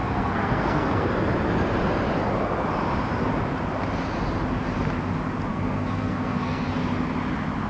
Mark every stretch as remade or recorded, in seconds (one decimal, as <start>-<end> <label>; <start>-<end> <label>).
0.0-1.1 remade; 1.1-5.5 recorded; 5.5-6.8 remade; 6.8-7.7 recorded